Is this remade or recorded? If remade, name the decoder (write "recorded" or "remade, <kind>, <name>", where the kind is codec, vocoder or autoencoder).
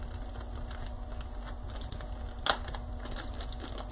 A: recorded